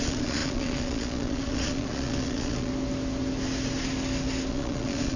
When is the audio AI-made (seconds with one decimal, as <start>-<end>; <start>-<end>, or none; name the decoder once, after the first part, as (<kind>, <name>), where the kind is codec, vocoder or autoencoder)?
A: 0.0-2.7 (vocoder, Vocos); 4.5-5.2